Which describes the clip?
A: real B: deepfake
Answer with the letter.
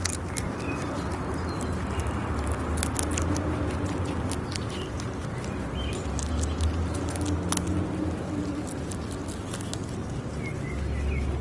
A